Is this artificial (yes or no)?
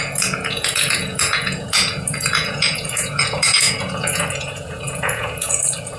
yes